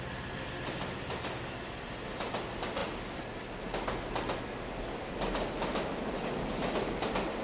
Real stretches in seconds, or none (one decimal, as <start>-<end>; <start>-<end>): 0.0-7.4